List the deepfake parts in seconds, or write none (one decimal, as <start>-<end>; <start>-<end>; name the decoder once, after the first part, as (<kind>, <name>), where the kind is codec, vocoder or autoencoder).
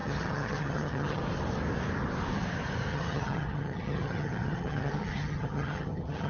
0.0-1.2 (vocoder, HiFi-GAN); 2.9-6.3